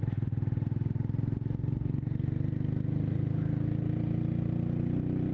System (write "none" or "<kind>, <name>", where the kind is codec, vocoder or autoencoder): none